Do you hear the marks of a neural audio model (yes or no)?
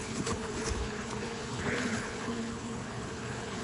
yes